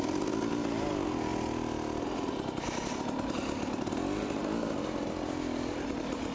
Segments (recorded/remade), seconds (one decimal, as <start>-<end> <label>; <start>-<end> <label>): 0.0-6.3 recorded